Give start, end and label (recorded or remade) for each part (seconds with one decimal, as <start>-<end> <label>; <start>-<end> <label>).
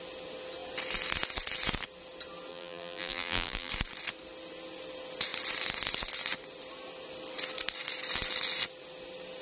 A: 0.0-2.5 recorded; 2.5-3.7 remade; 3.7-9.4 recorded